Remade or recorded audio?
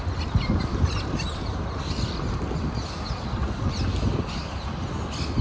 recorded